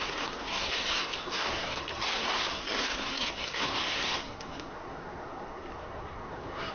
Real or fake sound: fake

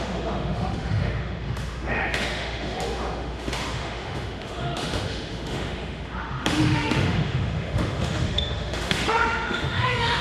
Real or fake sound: fake